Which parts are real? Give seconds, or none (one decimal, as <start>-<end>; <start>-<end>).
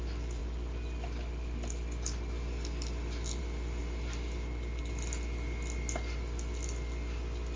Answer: 0.0-3.8; 4.8-7.6